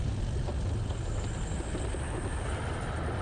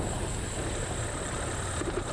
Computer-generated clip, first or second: second